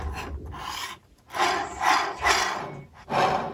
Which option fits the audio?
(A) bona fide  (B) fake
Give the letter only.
A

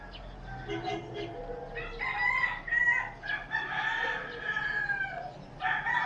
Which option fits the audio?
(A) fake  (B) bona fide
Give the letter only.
B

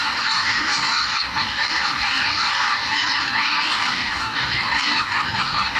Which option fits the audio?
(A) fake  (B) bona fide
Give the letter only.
A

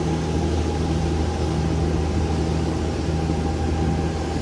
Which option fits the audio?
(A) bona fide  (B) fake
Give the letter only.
A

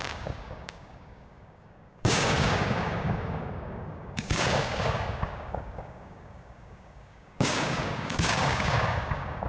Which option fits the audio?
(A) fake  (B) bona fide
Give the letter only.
A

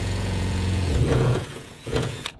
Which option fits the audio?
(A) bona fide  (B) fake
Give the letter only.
B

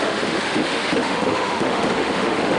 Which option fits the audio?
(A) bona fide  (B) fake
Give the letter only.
B